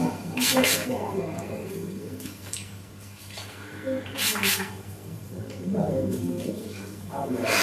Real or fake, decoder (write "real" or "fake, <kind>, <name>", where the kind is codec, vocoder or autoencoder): fake, codec, SNAC